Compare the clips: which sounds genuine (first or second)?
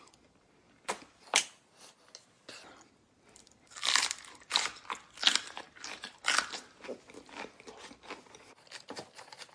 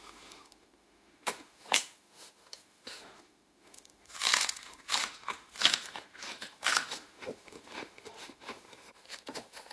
first